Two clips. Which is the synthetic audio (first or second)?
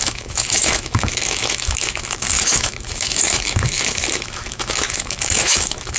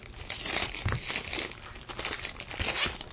first